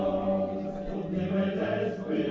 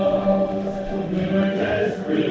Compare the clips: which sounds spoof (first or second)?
second